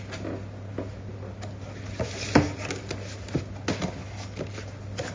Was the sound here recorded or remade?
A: recorded